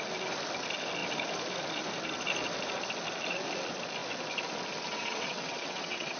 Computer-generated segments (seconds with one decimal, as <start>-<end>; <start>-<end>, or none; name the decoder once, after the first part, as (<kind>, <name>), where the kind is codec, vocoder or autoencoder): 4.9-6.2 (vocoder, WaveNeXt)